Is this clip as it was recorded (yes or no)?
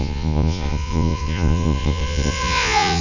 no